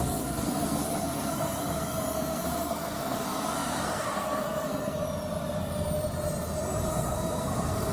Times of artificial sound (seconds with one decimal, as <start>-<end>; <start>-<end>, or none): 0.0-5.0; 6.9-7.9